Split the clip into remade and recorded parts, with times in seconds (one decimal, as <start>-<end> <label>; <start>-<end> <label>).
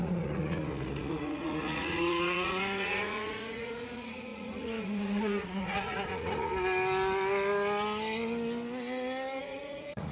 0.0-6.5 remade; 6.5-9.4 recorded; 9.4-10.1 remade